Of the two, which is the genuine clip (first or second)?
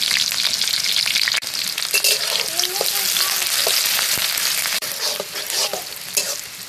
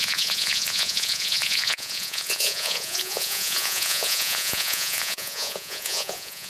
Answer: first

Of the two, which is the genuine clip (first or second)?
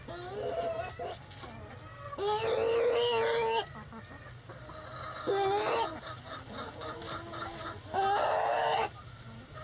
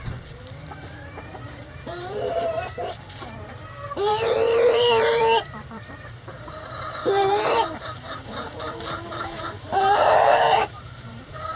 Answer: first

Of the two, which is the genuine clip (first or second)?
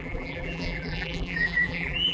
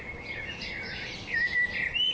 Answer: second